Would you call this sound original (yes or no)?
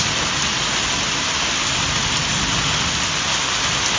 yes